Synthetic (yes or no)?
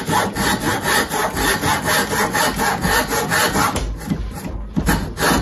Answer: no